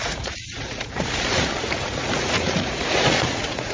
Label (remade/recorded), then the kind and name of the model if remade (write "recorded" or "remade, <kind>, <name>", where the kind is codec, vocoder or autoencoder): remade, vocoder, Vocos